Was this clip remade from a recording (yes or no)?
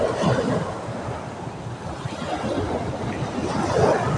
no